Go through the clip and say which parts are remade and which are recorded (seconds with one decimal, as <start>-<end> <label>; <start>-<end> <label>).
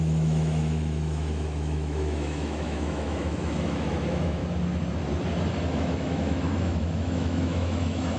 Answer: 0.0-4.4 remade; 4.4-5.7 recorded; 5.7-8.2 remade